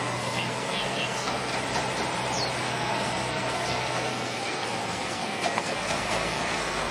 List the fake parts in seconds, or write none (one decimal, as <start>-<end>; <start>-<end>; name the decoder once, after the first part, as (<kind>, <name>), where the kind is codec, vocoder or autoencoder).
0.0-1.5 (codec, SNAC); 2.6-6.9